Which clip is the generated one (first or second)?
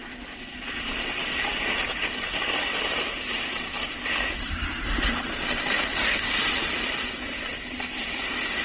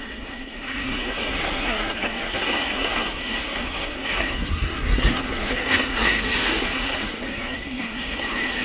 second